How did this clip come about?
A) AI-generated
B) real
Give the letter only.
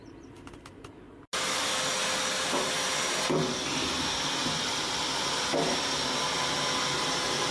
B